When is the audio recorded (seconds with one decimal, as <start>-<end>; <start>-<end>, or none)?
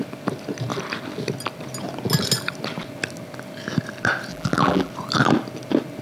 0.0-4.3; 4.9-6.0